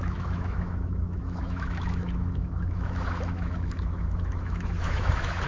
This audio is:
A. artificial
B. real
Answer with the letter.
A